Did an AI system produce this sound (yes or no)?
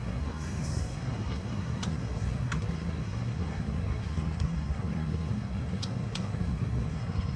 yes